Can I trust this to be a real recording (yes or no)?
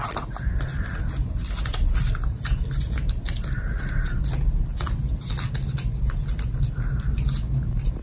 yes